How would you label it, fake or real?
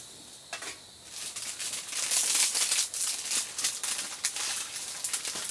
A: real